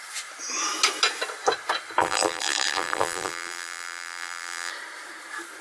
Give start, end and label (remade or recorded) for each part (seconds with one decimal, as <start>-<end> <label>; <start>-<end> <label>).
0.0-2.0 recorded; 2.0-4.7 remade; 4.7-5.6 recorded